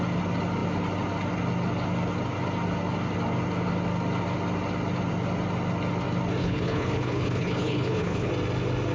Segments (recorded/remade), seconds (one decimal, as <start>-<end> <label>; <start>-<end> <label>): 0.0-6.4 recorded; 6.4-8.3 remade; 8.3-8.9 recorded